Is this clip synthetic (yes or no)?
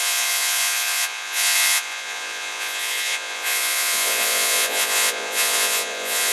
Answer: yes